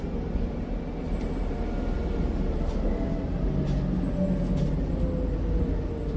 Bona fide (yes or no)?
yes